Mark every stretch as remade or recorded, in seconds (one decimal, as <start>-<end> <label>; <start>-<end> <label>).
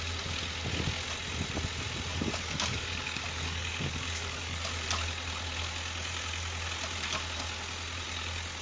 0.0-2.1 recorded; 2.1-4.6 remade; 4.6-8.6 recorded